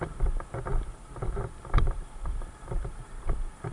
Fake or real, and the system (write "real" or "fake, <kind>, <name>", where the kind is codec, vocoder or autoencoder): real